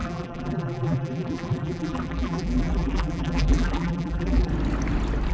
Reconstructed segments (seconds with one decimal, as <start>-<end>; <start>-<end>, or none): 0.0-4.5